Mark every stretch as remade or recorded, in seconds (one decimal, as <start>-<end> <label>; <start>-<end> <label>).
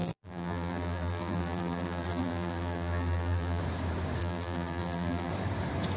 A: 0.0-3.6 remade; 3.6-4.2 recorded; 4.2-5.3 remade; 5.3-6.0 recorded